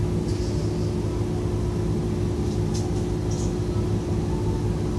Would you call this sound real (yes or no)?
yes